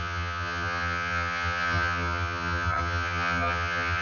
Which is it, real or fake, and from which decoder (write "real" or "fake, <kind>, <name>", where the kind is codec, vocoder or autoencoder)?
fake, vocoder, HiFi-GAN